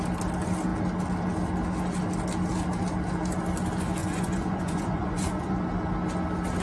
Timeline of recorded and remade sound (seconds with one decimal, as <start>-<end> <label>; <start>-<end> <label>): 0.0-4.0 recorded; 4.0-5.6 remade; 5.6-6.6 recorded